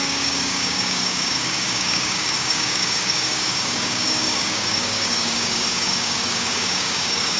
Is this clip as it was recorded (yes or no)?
no